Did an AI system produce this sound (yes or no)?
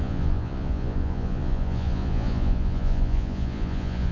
yes